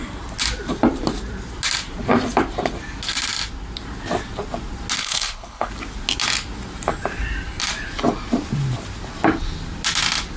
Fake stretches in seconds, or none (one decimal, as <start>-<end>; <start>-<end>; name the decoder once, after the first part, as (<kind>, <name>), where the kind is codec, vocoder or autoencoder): 5.0-5.7 (codec, HILCodec)